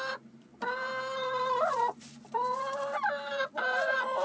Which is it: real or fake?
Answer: fake